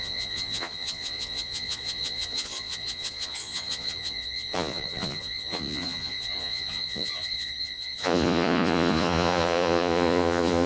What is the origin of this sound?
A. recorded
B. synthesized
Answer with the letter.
B